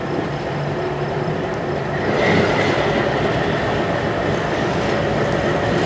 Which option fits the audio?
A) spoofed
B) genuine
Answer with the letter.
B